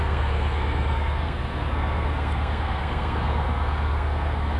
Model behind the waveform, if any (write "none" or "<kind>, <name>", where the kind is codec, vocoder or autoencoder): codec, SNAC